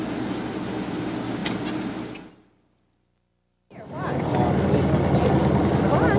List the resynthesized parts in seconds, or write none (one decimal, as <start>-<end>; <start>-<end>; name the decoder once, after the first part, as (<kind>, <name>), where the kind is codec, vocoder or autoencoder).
none